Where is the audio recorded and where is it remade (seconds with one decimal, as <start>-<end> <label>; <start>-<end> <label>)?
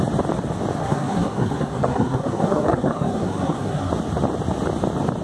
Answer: 0.0-0.8 recorded; 0.8-3.9 remade; 3.9-5.2 recorded